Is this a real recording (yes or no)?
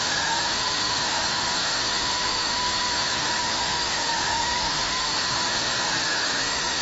no